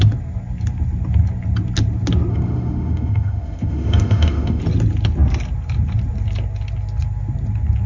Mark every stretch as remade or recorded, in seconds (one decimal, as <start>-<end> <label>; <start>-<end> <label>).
0.0-2.3 recorded; 2.3-4.6 remade; 4.6-7.9 recorded